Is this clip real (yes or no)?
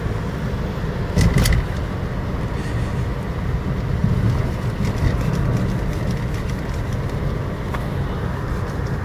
yes